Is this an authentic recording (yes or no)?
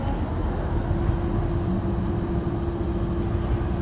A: yes